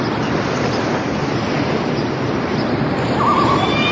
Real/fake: real